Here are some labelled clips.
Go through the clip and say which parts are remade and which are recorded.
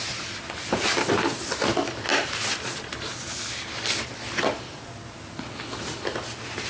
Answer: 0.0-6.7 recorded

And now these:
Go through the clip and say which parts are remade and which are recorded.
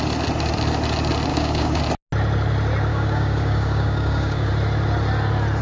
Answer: 0.0-1.3 recorded; 1.3-1.8 remade; 1.8-2.9 recorded; 2.9-4.5 remade; 4.5-5.6 recorded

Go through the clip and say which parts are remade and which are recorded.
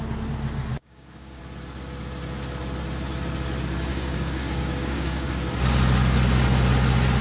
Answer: 0.0-0.7 recorded; 0.7-1.4 remade; 1.4-3.9 recorded; 3.9-5.3 remade; 5.3-7.2 recorded